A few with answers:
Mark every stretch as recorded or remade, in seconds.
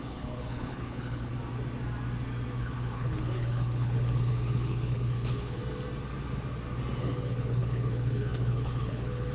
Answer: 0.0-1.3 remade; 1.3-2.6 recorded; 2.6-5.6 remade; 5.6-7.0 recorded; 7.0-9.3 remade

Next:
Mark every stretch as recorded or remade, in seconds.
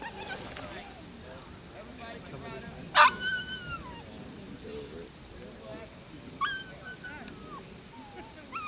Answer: 0.0-8.7 recorded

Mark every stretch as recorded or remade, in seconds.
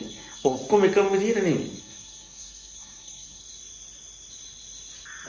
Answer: 0.0-0.6 remade; 0.6-1.8 recorded; 1.8-3.4 remade; 3.4-5.3 recorded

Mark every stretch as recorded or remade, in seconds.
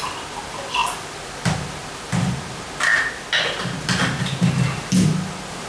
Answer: 0.0-5.7 recorded